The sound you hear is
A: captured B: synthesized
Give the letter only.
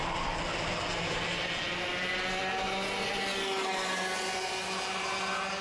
A